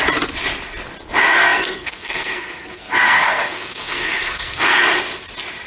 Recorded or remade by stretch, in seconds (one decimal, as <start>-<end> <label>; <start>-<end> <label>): 0.0-1.4 recorded; 1.4-4.8 remade; 4.8-5.7 recorded